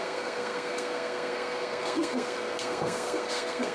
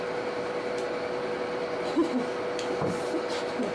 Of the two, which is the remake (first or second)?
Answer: first